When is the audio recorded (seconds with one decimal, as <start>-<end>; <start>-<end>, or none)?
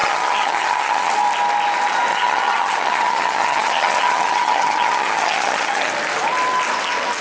1.1-2.1; 5.9-7.2